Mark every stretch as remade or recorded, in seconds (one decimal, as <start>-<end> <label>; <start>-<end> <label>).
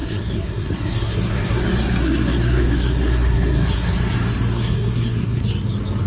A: 0.0-1.6 remade; 1.6-2.0 recorded; 2.0-3.9 remade; 3.9-4.5 recorded; 4.5-5.4 remade; 5.4-6.1 recorded